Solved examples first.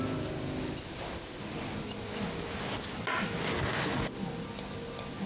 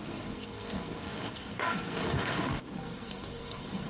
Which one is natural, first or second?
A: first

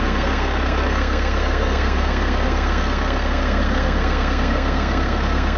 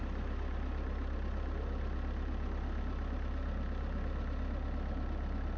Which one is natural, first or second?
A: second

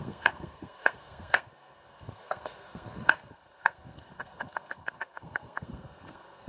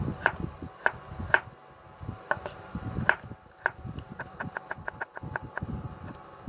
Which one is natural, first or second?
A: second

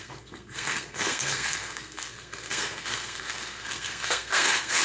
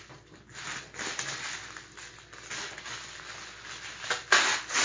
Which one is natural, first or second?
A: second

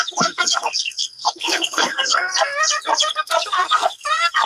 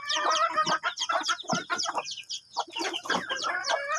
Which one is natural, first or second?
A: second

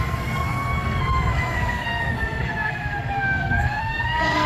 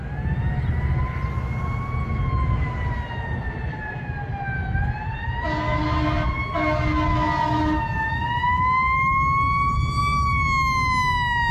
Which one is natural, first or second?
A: second